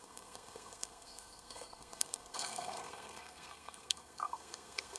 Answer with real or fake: fake